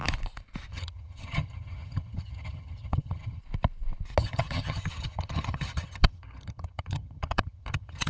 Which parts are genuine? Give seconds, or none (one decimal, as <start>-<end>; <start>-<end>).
0.0-0.7; 3.4-4.2